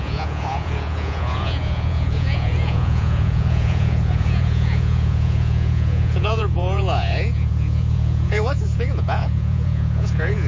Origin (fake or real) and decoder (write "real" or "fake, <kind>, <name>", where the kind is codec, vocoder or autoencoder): fake, vocoder, Vocos